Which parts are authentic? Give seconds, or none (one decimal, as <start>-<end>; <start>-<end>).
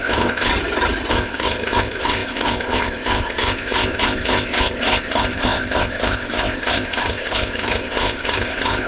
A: 0.5-1.1